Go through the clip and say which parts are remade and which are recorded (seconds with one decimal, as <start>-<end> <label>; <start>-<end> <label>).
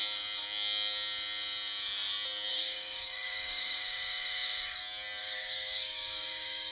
0.0-2.5 recorded; 2.5-4.8 remade; 4.8-5.2 recorded; 5.2-6.7 remade